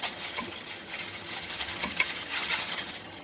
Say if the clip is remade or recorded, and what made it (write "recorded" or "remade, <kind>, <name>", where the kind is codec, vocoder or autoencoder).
remade, vocoder, HiFi-GAN